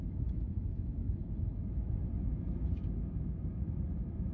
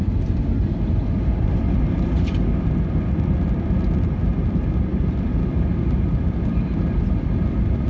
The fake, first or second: first